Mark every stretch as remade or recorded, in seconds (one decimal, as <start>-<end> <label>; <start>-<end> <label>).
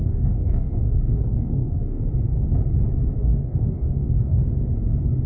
0.0-2.0 remade; 2.0-3.2 recorded; 3.2-4.4 remade; 4.4-5.3 recorded